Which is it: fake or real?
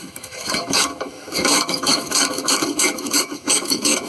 fake